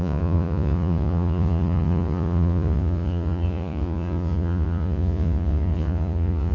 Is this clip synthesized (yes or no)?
yes